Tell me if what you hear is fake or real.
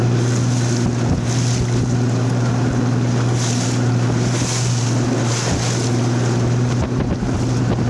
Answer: real